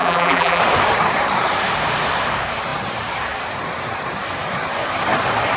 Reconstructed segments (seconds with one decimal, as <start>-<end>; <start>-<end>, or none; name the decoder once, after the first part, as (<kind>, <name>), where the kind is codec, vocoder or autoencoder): 0.0-0.6 (vocoder, BigVGAN v2)

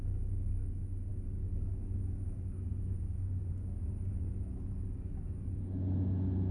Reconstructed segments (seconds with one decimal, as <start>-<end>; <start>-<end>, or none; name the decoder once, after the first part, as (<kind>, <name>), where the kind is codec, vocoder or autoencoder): none

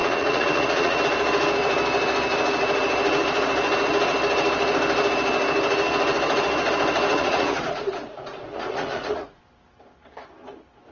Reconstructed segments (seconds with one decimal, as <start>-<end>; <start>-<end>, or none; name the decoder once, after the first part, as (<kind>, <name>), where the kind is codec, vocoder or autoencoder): 0.0-1.0 (vocoder, Vocos); 7.1-9.4

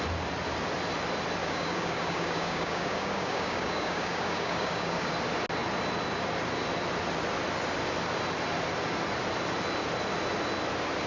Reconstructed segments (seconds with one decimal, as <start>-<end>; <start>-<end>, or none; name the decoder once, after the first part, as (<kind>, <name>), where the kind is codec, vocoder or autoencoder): 1.4-5.1 (codec, DAC)

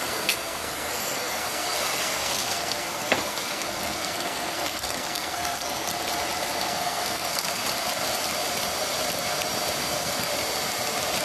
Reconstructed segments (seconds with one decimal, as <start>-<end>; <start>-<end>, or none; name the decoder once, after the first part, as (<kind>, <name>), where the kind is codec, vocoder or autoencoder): 0.0-5.9 (codec, SNAC); 6.6-7.6; 9.8-10.3

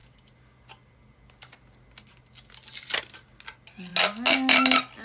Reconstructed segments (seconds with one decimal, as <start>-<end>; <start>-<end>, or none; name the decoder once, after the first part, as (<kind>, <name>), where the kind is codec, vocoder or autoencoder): none